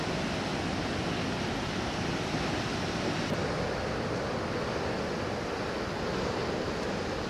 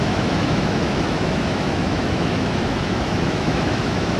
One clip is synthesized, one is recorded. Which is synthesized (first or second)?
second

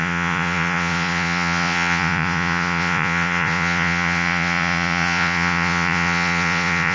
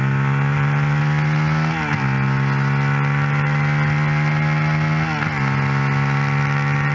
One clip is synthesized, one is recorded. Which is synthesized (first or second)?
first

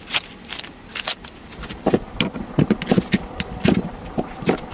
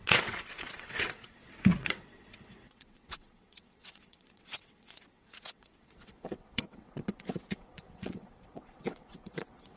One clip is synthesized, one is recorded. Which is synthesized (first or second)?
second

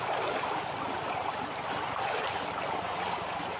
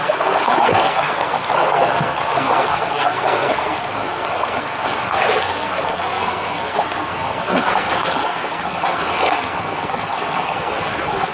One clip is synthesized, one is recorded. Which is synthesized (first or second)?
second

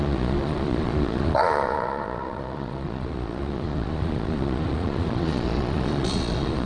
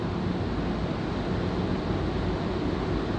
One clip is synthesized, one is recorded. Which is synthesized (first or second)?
first